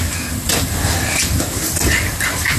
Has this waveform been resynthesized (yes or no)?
no